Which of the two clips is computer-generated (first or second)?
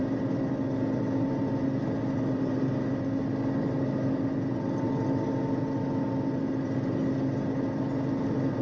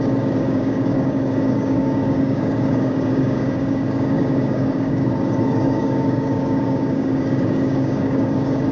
second